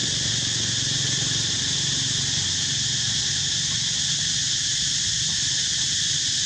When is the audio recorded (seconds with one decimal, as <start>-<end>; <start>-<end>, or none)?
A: 0.0-6.5